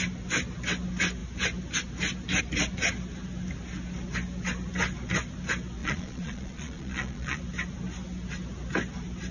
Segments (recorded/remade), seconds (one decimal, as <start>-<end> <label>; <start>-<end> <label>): 0.0-5.8 recorded; 5.8-7.4 remade; 7.4-9.3 recorded